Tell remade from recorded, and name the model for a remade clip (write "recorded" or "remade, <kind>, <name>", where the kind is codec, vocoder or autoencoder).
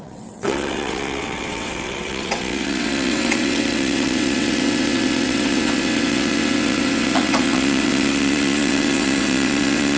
remade, vocoder, WaveNeXt